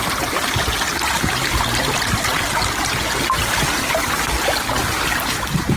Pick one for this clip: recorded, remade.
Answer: recorded